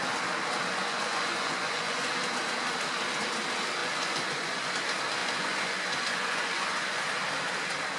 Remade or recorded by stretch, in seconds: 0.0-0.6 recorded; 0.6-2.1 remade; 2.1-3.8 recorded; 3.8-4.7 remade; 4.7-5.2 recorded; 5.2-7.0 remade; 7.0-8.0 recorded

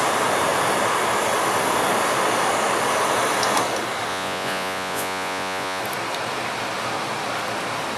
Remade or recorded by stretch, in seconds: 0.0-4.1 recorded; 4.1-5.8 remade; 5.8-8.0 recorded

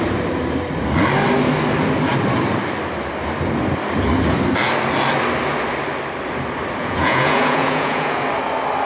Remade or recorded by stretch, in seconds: 0.0-6.8 recorded; 6.8-8.2 remade; 8.2-8.9 recorded

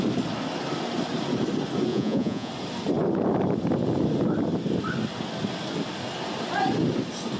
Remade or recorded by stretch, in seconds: 0.0-1.9 recorded; 1.9-2.5 remade; 2.5-7.4 recorded

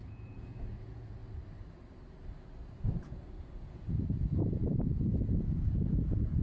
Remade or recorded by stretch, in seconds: 0.0-1.2 remade; 1.2-3.0 recorded; 3.0-6.4 remade

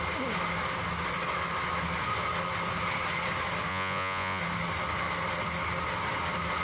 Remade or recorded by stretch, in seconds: 0.0-3.7 recorded; 3.7-4.4 remade; 4.4-6.6 recorded